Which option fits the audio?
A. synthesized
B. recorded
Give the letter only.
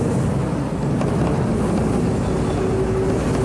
B